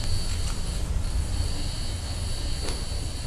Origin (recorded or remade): recorded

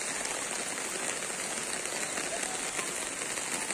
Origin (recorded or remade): recorded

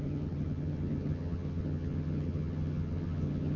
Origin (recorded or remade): remade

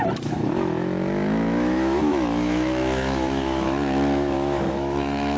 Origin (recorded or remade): remade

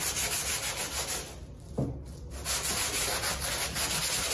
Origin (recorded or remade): recorded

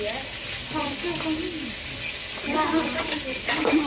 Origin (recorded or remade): recorded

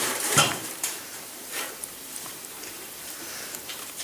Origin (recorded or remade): remade